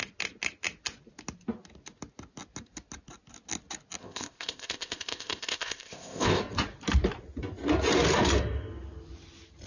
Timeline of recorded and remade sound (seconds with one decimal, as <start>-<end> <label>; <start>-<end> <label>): 0.0-4.0 recorded; 4.0-6.4 remade; 6.4-9.7 recorded